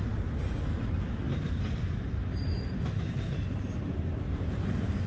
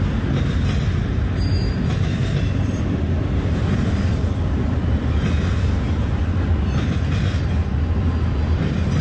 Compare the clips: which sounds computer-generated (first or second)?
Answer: first